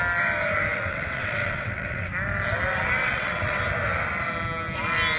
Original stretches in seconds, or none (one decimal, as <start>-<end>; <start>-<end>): 0.0-0.7; 2.1-3.0; 3.6-5.2